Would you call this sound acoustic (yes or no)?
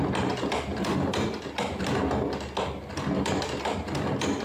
yes